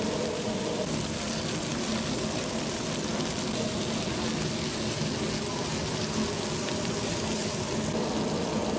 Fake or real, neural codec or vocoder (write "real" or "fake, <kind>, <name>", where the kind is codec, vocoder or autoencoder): real